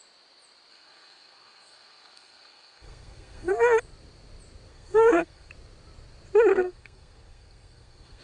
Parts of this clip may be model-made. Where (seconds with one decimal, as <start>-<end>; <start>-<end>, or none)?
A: 0.7-3.5; 4.7-5.5; 6.5-8.2